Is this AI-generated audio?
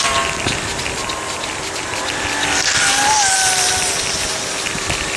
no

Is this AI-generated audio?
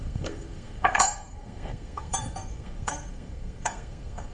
yes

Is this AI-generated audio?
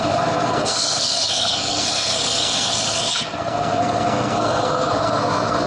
yes